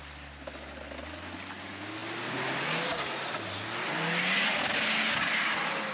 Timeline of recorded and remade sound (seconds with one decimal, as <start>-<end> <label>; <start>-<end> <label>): 0.0-5.9 recorded

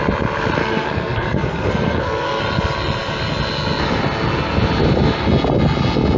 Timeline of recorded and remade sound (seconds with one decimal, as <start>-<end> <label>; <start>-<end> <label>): 0.0-0.6 recorded; 0.6-2.4 remade; 2.4-6.2 recorded

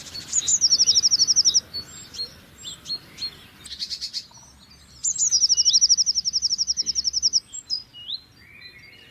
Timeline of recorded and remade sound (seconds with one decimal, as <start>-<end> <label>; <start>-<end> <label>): 0.0-0.5 remade; 0.5-4.8 recorded; 4.8-5.2 remade; 5.2-6.5 recorded; 6.5-9.1 remade

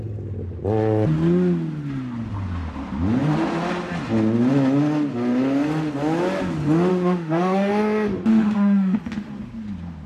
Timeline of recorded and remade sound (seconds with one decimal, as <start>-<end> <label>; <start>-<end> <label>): 0.0-6.9 recorded; 6.9-7.7 remade; 7.7-8.3 recorded; 8.3-9.0 remade; 9.0-10.1 recorded

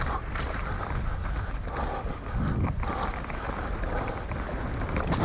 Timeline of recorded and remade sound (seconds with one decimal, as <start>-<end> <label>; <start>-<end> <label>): 0.0-1.2 remade; 1.2-2.9 recorded; 2.9-5.2 remade

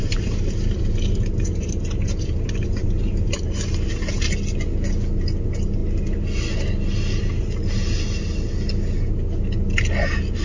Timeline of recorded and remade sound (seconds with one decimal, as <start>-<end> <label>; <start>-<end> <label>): 0.0-3.4 remade; 3.4-10.4 recorded

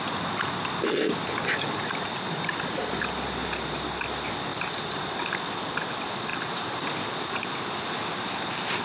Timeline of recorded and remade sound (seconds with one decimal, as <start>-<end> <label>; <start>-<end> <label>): 0.0-6.3 recorded; 6.3-7.0 remade; 7.0-8.8 recorded